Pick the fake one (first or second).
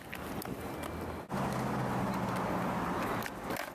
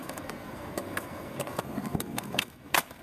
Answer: second